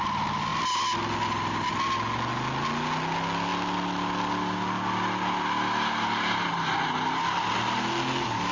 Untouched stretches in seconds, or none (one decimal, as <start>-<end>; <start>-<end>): 0.0-8.5